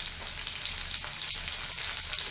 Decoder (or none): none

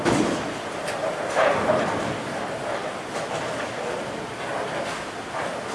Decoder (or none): none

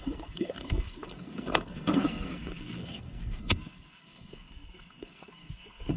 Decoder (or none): codec, SNAC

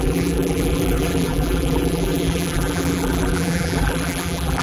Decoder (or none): vocoder, BigVGAN v2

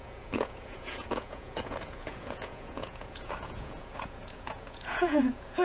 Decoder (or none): vocoder, Vocos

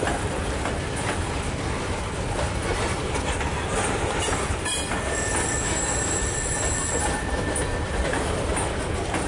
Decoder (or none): none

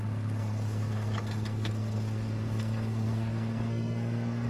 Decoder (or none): codec, SNAC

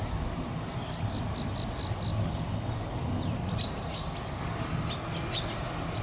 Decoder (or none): none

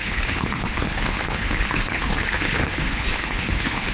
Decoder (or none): codec, HILCodec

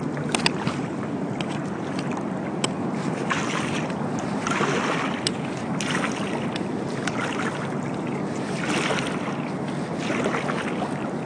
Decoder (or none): none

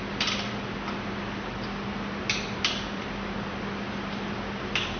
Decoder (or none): none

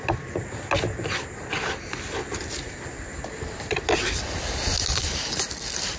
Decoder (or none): none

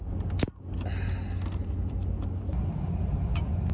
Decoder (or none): none